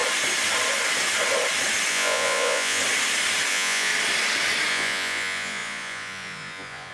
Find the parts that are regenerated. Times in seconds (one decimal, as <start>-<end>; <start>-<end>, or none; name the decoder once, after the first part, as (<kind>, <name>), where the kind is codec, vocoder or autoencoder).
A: 1.9-2.8 (vocoder, Vocos); 3.5-3.9; 4.7-6.9